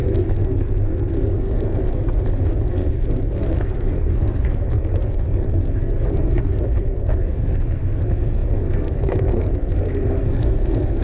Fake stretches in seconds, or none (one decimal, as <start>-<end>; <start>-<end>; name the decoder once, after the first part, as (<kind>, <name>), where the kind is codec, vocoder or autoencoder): 0.0-1.8 (codec, SNAC); 2.7-11.0